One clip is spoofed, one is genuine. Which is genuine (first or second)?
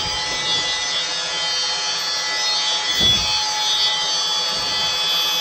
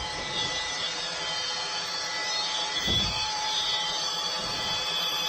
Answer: first